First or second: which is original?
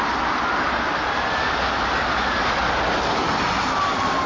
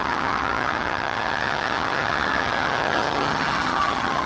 first